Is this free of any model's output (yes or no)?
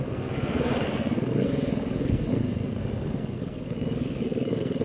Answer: no